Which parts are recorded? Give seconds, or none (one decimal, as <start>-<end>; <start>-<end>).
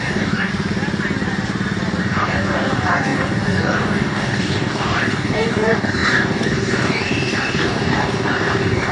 0.5-2.0